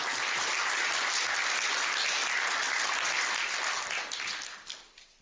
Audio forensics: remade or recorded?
recorded